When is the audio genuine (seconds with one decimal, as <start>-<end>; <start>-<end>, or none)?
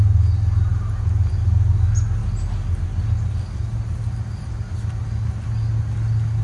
0.0-6.4